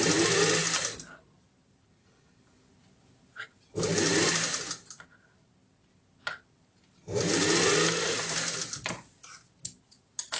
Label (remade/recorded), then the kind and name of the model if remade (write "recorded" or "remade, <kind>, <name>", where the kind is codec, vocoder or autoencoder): recorded